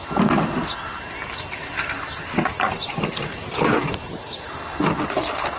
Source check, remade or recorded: recorded